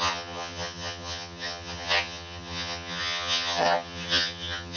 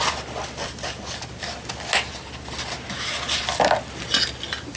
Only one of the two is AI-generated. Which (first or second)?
first